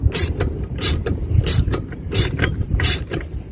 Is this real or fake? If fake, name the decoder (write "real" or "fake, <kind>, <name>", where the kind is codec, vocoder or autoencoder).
fake, vocoder, BigVGAN v2